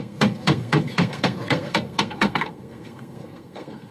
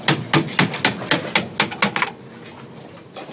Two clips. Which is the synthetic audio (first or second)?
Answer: first